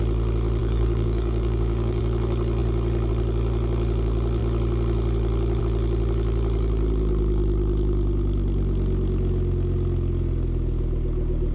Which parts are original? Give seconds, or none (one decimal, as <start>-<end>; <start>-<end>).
0.0-0.6; 2.0-11.5